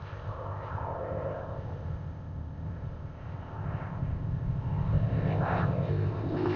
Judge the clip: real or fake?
fake